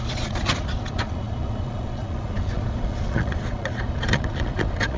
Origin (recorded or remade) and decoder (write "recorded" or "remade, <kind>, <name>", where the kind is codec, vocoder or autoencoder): remade, vocoder, Vocos